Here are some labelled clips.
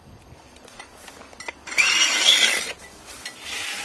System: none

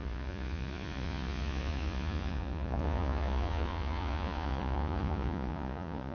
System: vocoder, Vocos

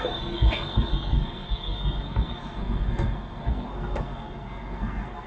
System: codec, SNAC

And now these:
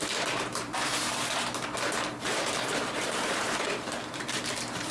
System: vocoder, BigVGAN v2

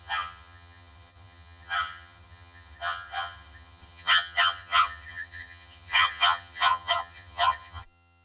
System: vocoder, HiFi-GAN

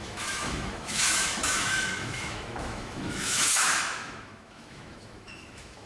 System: autoencoder, DAC-VAE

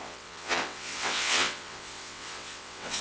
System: vocoder, WaveNeXt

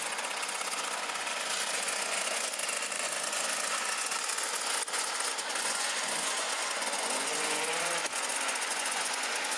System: vocoder, Vocos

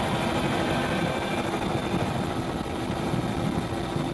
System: none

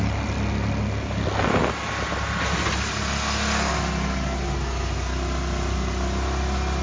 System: none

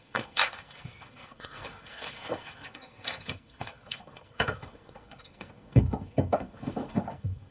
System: codec, SNAC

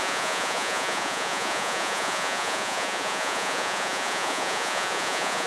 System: vocoder, Vocos